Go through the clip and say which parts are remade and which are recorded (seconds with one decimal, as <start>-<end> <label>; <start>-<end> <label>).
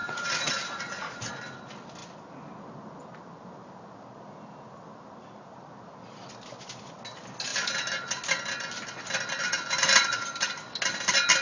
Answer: 0.0-1.3 remade; 1.3-11.4 recorded